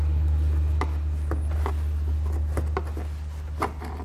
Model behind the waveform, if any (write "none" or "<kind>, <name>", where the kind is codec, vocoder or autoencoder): none